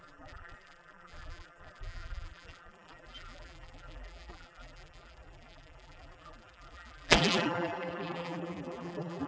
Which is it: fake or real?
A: fake